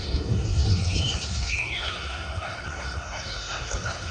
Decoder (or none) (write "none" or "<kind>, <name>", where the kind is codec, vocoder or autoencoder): codec, SNAC